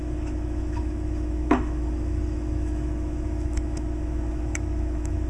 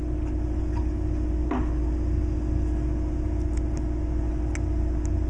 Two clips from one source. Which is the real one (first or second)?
second